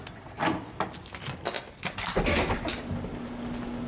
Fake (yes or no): no